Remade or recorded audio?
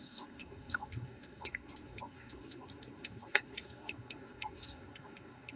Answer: remade